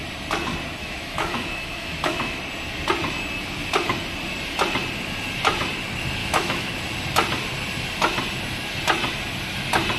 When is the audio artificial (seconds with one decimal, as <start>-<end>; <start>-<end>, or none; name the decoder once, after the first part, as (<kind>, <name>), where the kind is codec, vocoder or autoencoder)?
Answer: 0.8-2.4 (autoencoder, DAC-VAE); 6.2-6.7